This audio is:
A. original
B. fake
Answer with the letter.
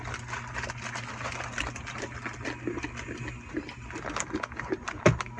A